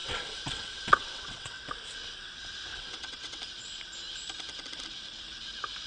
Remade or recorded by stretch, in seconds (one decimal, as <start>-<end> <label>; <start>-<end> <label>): 0.0-1.7 remade; 1.7-2.7 recorded; 2.7-3.4 remade; 3.4-5.9 recorded